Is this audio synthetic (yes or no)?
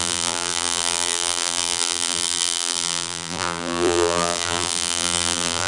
yes